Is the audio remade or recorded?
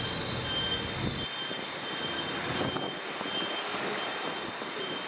recorded